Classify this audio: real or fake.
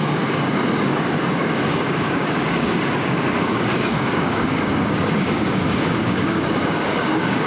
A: fake